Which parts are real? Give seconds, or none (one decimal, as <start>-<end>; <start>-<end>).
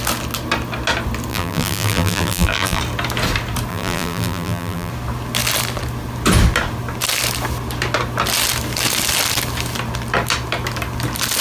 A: 0.0-1.3; 2.8-3.7; 4.9-11.4